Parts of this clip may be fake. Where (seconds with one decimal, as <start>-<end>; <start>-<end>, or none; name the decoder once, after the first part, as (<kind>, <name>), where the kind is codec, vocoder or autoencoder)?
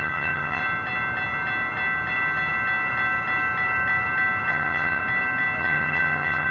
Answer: 0.0-0.6 (vocoder, HiFi-GAN); 4.5-5.0; 5.6-6.5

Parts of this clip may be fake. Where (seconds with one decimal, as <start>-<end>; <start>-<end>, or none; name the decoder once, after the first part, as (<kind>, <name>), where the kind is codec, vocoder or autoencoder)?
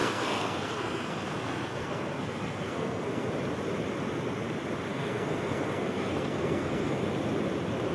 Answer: 0.0-3.3 (codec, SNAC); 4.9-7.1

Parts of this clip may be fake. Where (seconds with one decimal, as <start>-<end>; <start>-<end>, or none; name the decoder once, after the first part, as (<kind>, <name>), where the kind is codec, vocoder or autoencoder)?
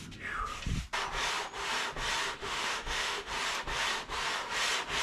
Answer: 2.4-3.3 (autoencoder, DAC-VAE)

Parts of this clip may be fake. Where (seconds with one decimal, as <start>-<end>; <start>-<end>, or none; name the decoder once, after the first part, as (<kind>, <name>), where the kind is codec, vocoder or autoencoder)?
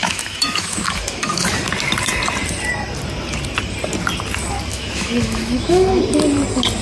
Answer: 0.0-1.6 (autoencoder, DAC-VAE); 4.7-6.0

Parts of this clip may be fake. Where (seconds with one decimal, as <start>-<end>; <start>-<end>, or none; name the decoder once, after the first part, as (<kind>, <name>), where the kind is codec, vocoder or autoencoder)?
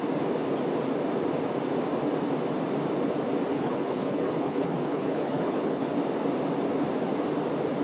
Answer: 3.5-5.9 (codec, HILCodec)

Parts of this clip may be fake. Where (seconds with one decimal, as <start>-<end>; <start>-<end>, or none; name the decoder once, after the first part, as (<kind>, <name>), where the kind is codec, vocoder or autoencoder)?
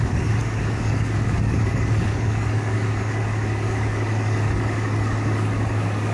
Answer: 0.0-6.1 (codec, DAC)